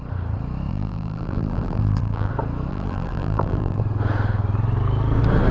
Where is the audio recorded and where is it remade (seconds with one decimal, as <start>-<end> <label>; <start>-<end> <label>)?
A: 0.0-0.7 recorded; 0.7-2.3 remade; 2.3-2.7 recorded; 2.7-3.8 remade; 3.8-5.5 recorded